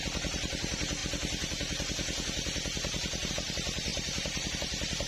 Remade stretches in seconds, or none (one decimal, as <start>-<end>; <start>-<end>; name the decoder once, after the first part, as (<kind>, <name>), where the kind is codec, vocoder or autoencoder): 0.0-1.0 (vocoder, BigVGAN v2); 3.3-5.1